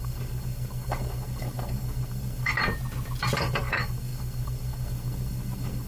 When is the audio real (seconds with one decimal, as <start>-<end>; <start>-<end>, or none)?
2.5-3.4